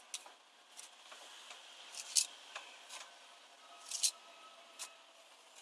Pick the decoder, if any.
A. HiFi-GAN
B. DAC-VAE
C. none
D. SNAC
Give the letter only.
C